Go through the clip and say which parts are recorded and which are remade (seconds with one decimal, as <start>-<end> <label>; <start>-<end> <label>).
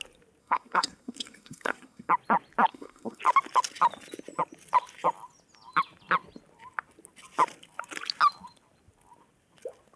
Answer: 0.0-0.4 recorded; 0.4-2.1 remade; 2.1-2.7 recorded; 2.7-3.2 remade; 3.2-10.0 recorded